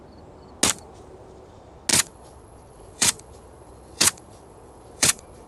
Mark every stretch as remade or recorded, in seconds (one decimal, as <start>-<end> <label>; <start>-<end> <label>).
0.0-1.9 recorded; 1.9-5.5 remade